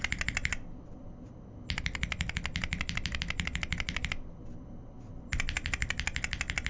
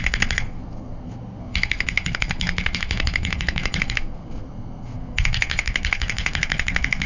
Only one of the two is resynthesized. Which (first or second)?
second